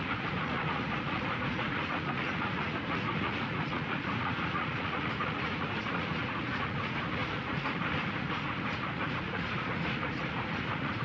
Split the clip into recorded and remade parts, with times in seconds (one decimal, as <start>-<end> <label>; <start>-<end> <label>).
0.0-11.0 remade